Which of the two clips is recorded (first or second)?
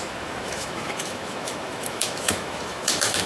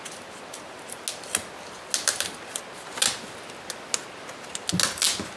second